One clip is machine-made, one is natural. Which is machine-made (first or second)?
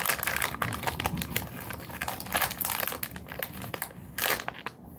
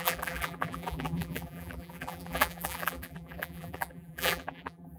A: second